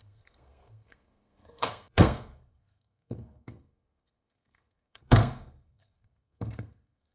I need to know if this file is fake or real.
fake